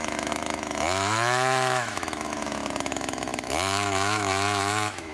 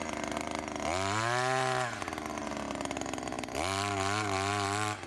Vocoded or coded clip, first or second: first